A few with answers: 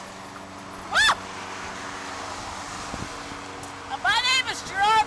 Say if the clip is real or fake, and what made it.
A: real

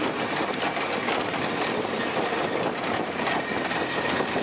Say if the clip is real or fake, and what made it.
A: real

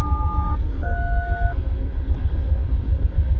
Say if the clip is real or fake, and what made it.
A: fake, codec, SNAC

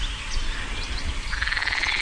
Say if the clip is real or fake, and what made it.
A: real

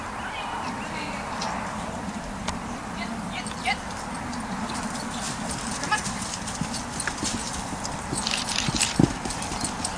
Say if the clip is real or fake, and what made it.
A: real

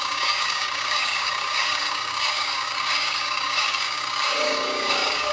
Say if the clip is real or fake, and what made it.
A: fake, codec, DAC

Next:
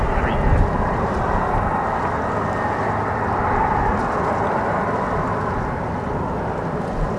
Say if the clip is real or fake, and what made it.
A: real